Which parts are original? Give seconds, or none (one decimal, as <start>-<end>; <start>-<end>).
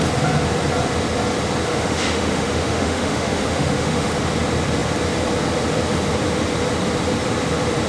0.0-1.7; 4.1-7.9